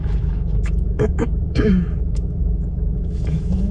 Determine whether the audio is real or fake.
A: fake